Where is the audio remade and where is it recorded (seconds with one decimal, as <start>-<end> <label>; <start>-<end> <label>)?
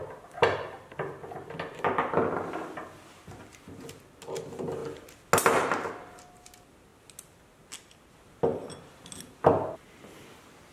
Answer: 0.0-10.7 recorded